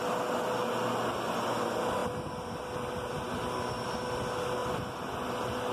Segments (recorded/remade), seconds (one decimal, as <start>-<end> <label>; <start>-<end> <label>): 0.0-5.7 recorded